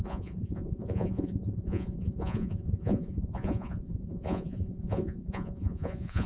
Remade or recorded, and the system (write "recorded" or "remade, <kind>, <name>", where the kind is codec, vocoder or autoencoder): remade, vocoder, Vocos